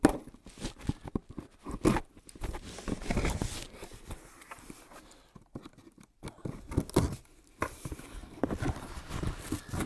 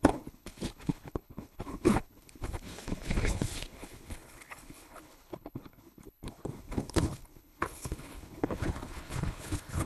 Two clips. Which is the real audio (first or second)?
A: first